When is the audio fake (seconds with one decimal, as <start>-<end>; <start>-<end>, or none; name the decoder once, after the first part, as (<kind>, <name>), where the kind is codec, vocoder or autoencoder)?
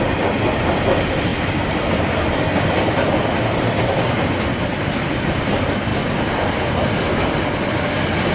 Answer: none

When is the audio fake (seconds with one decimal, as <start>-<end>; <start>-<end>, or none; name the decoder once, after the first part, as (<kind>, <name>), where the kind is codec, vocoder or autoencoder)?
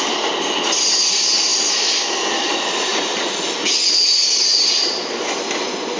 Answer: 1.5-3.1 (vocoder, BigVGAN v2); 4.5-5.4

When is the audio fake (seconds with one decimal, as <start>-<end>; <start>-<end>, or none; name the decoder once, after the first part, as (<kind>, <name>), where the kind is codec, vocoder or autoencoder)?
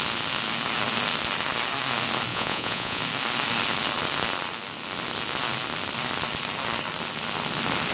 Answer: 2.3-3.0 (vocoder, Vocos)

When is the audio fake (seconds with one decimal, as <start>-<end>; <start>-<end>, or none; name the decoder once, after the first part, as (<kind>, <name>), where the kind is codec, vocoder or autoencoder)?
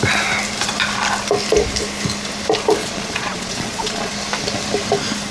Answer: 2.8-4.1 (vocoder, Vocos)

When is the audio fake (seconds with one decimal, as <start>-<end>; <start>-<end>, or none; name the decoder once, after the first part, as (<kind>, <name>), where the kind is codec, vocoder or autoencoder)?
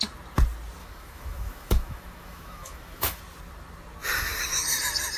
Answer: 0.8-3.2 (autoencoder, DAC-VAE)